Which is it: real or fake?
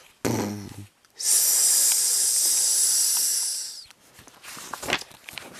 real